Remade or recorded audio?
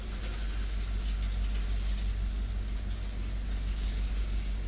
recorded